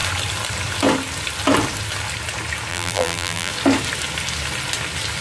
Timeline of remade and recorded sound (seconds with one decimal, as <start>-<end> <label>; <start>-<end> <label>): 0.0-2.7 recorded; 2.7-3.5 remade; 3.5-5.2 recorded